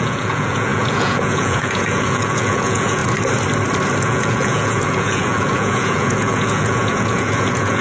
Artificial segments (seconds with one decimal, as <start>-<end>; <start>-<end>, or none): 0.0-3.0; 4.0-7.8